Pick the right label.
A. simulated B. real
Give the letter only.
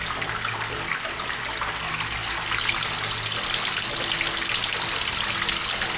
B